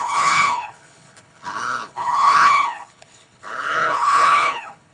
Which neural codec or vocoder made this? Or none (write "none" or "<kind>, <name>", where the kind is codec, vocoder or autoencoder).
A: codec, HILCodec